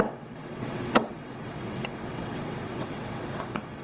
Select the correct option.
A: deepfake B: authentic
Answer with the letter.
A